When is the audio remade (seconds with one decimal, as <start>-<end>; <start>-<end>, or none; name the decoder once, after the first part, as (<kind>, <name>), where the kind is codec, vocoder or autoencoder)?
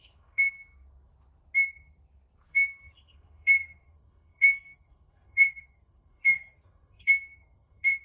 0.0-1.1 (codec, SNAC); 2.5-8.0